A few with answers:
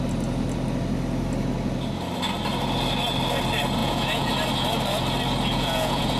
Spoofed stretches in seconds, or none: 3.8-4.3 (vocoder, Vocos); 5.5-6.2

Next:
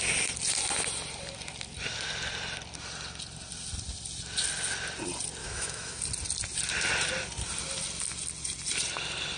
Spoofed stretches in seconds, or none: 5.4-6.0 (autoencoder, DAC-VAE)

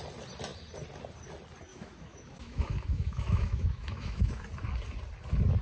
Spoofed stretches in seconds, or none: 1.7-4.4 (autoencoder, DAC-VAE)

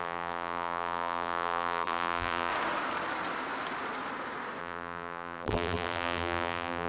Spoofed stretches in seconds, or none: 0.0-2.5 (vocoder, BigVGAN v2); 4.6-6.9

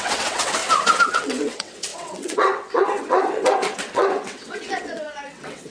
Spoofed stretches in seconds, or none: 0.0-0.6 (vocoder, WaveNeXt); 1.1-5.7

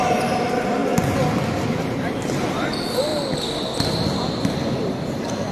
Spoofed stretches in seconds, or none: 0.0-0.8 (vocoder, BigVGAN v2); 1.8-3.1; 4.8-5.5

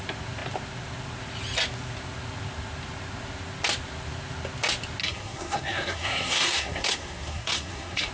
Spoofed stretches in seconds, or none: 5.0-8.1 (codec, SNAC)

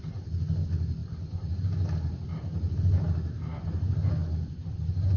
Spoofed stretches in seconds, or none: none